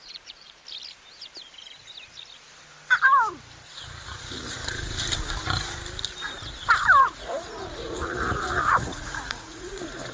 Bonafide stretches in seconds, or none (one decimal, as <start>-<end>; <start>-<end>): 0.6-3.7; 4.8-7.0